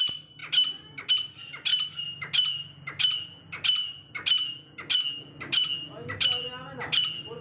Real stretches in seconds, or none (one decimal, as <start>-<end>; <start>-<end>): 0.0-7.4